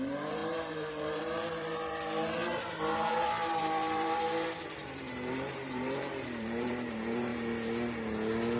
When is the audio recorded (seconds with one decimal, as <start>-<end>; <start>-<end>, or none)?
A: 7.3-8.6